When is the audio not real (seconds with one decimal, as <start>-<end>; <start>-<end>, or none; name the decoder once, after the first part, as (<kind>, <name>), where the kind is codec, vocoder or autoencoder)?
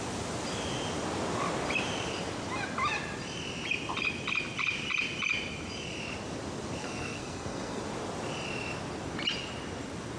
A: 6.8-7.8 (codec, SNAC)